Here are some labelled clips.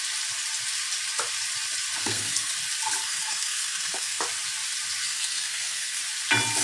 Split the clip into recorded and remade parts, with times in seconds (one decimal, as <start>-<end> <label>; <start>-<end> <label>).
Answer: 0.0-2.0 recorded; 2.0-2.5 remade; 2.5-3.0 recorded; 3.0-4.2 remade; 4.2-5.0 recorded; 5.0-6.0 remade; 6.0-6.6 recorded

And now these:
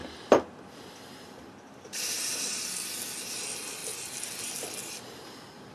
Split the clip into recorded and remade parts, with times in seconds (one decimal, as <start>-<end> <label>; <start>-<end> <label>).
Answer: 0.0-3.4 remade; 3.4-3.8 recorded; 3.8-5.7 remade

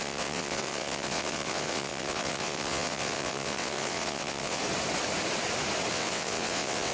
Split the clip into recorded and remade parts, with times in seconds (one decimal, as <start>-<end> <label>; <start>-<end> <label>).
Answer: 0.0-4.6 remade; 4.6-5.9 recorded; 5.9-6.9 remade

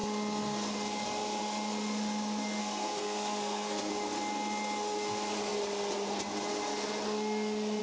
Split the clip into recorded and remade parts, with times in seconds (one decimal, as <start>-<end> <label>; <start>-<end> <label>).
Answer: 0.0-2.6 recorded; 2.6-3.9 remade; 3.9-7.8 recorded